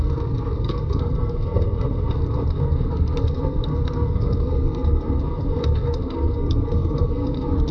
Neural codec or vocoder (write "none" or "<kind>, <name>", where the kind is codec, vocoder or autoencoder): codec, SNAC